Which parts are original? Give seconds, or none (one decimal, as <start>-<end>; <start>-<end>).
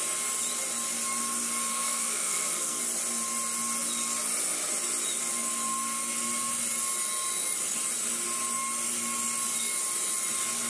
0.0-1.7; 2.8-10.7